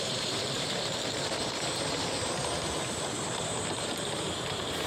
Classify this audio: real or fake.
fake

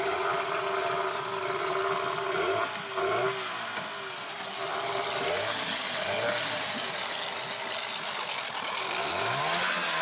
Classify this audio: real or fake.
real